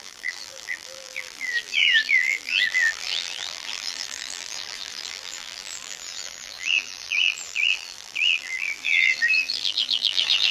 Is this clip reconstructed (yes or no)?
yes